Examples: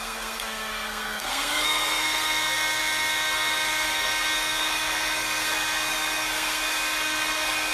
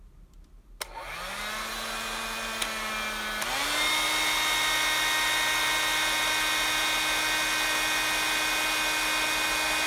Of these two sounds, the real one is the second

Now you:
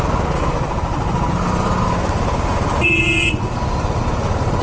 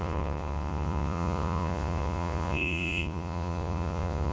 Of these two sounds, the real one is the first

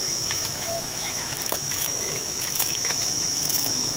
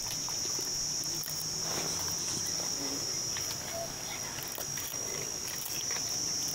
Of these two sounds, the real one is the second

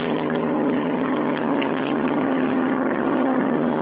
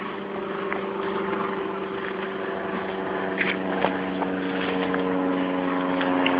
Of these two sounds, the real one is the second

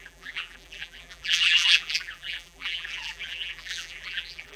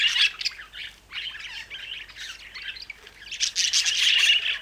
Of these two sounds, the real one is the second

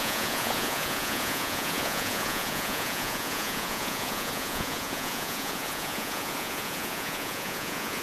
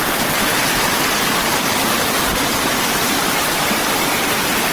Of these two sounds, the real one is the second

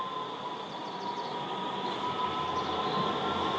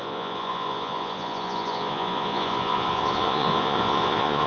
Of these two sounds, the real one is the first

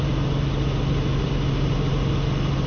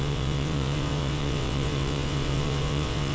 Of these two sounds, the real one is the first